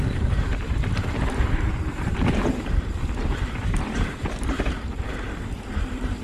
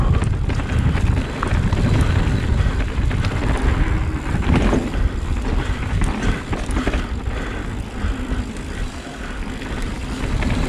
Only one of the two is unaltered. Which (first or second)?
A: second